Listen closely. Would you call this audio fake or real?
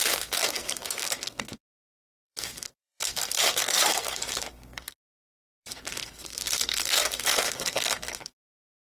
fake